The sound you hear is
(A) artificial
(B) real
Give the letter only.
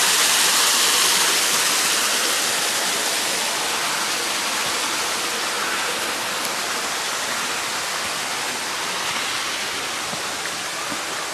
B